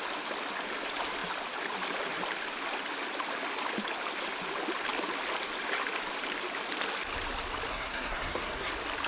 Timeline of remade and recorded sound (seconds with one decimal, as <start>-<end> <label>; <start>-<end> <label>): 0.0-7.7 recorded; 7.7-8.7 remade; 8.7-9.1 recorded